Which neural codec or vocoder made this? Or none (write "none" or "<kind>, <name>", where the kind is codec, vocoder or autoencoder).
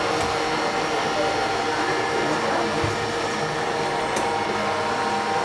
none